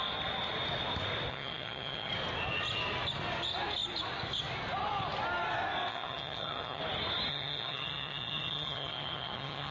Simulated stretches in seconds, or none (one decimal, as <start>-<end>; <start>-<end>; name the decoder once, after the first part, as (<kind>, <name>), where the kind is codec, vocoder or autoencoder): 1.3-2.1 (vocoder, HiFi-GAN); 5.9-6.8; 7.3-9.7